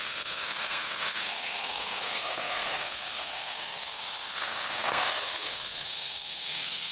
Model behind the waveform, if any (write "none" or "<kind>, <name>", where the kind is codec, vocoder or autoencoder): codec, SNAC